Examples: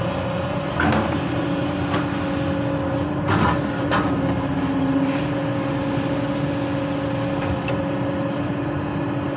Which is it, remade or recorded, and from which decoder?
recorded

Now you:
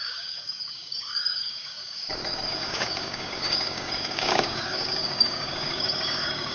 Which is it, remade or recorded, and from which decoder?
remade, codec, DAC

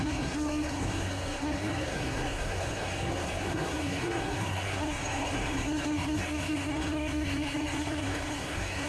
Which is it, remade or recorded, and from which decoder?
remade, codec, SNAC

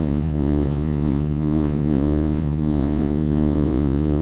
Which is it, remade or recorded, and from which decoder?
remade, vocoder, Vocos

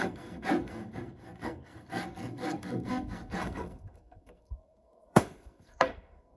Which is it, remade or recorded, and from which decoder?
remade, codec, SNAC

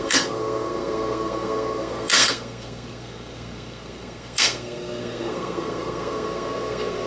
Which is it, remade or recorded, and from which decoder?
remade, codec, SNAC